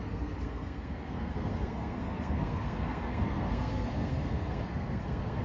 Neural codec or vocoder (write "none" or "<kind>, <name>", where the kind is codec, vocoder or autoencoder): codec, SNAC